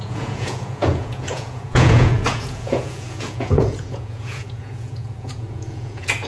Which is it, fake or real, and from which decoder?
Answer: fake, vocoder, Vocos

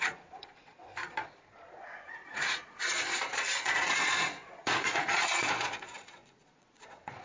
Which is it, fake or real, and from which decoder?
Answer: fake, vocoder, Vocos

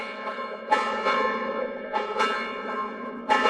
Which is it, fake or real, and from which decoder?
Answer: fake, vocoder, Vocos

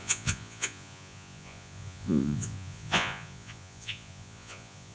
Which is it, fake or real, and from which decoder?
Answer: fake, vocoder, Vocos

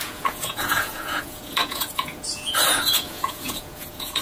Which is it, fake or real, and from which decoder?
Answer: fake, vocoder, Vocos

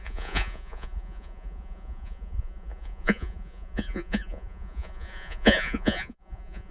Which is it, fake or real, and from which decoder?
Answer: fake, vocoder, Vocos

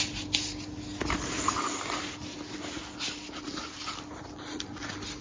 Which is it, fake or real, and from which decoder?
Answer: real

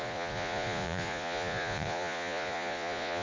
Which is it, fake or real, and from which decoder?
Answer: fake, vocoder, Vocos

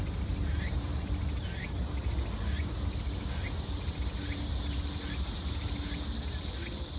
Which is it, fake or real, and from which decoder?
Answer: real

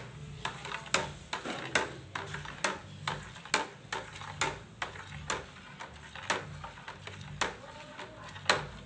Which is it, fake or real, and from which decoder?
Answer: real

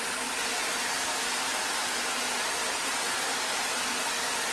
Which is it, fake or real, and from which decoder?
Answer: real